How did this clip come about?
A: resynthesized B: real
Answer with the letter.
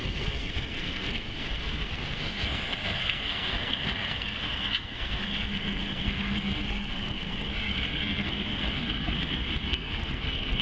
A